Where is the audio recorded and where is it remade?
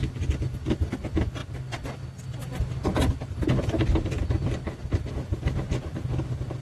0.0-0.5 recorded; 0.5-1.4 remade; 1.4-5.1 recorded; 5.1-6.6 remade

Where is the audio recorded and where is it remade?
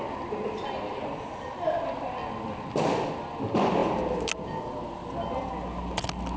0.0-6.4 recorded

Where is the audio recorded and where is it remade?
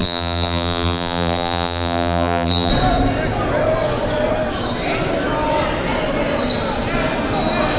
0.0-2.7 remade; 2.7-7.8 recorded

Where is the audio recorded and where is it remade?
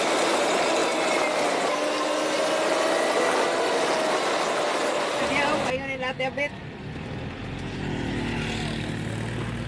0.0-9.7 recorded